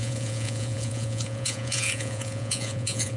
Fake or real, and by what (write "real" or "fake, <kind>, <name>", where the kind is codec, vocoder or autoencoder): fake, vocoder, Vocos